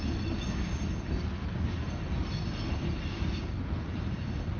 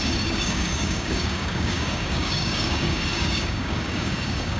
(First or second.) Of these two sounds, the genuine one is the first